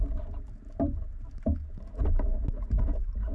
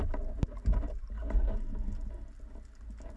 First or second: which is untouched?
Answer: second